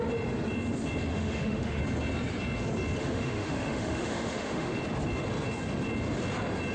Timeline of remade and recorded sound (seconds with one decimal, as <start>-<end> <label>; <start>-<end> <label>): 0.0-1.1 recorded; 1.1-1.8 remade; 1.8-3.0 recorded; 3.0-4.8 remade; 4.8-6.7 recorded